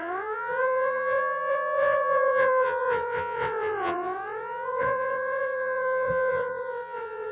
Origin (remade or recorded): remade